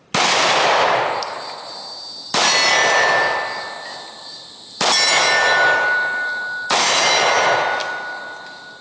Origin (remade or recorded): recorded